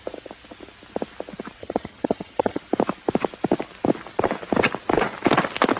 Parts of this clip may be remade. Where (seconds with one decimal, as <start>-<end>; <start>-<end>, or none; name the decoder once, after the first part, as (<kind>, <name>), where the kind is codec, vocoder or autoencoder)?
1.6-2.6 (vocoder, HiFi-GAN)